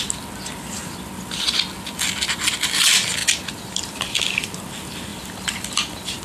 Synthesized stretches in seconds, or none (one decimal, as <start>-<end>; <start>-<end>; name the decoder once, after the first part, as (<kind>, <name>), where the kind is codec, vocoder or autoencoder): none